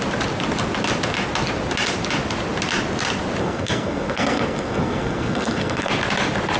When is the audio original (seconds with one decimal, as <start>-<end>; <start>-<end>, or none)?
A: 0.0-3.4; 5.9-6.6